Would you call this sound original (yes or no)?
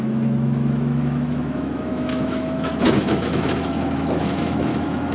no